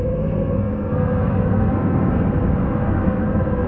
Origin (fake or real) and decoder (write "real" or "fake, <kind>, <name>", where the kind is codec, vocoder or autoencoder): fake, codec, SNAC